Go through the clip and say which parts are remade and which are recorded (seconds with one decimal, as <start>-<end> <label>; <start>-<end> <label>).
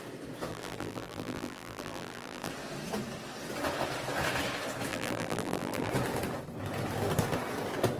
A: 0.0-0.5 recorded; 0.5-2.5 remade; 2.5-4.9 recorded; 4.9-5.9 remade; 5.9-8.0 recorded